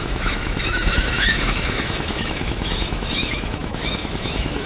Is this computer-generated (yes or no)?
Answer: yes